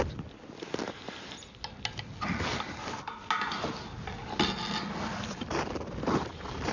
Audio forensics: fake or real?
real